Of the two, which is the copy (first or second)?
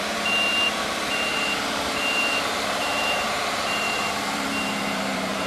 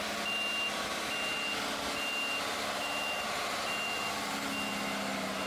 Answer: first